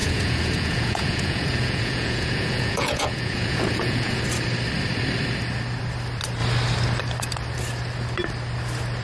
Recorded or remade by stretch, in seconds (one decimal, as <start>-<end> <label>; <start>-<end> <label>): 0.0-4.2 remade; 4.2-9.0 recorded